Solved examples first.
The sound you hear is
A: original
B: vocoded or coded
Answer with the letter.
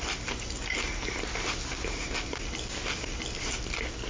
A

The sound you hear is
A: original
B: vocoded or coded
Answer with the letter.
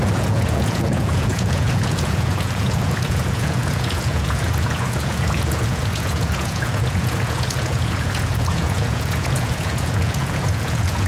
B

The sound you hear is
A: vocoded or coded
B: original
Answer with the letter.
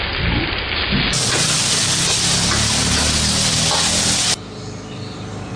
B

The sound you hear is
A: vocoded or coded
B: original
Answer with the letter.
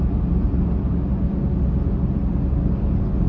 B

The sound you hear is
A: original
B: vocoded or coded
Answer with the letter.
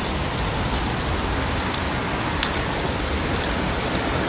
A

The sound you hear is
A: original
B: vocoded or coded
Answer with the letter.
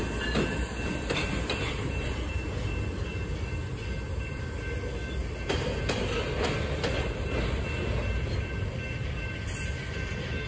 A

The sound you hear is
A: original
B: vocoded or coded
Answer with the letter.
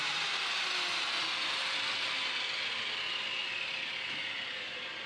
A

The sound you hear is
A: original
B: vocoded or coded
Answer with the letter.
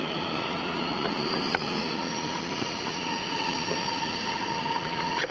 B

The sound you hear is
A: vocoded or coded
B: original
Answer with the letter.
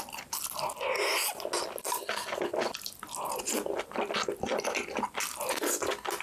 B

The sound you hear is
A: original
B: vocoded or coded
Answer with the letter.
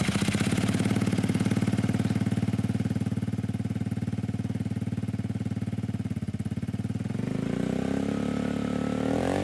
A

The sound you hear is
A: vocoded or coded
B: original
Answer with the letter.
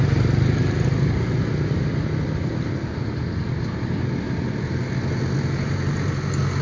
B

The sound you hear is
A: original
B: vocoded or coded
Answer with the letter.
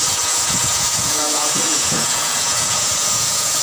B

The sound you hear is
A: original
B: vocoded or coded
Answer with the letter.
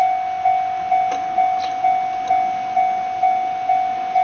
A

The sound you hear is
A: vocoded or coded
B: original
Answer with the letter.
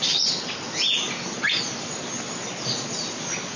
B